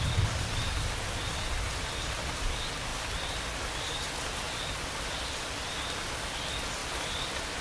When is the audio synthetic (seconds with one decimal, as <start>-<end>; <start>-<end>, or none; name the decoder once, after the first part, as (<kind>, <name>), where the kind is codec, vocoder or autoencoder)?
none